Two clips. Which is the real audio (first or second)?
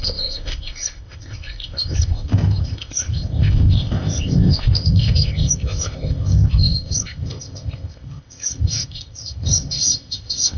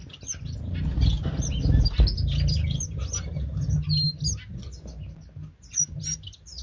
second